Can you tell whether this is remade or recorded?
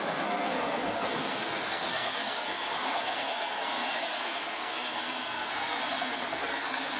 remade